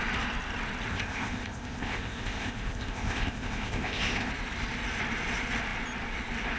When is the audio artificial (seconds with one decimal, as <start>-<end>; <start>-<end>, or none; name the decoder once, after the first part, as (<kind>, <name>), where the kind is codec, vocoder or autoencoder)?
0.9-4.3 (codec, ZipCodec)